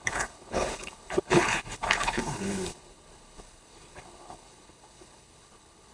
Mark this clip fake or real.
fake